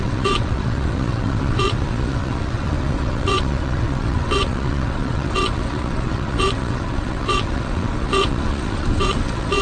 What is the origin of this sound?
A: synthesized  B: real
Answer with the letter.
A